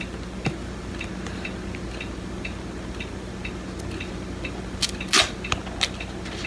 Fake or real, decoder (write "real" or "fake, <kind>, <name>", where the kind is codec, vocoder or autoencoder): real